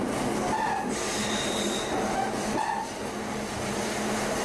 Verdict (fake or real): real